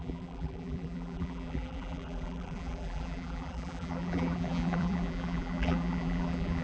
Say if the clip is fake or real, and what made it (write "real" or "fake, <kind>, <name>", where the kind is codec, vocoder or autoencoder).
fake, vocoder, BigVGAN v2